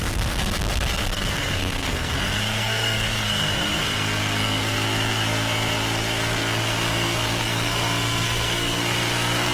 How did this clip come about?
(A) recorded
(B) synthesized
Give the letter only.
B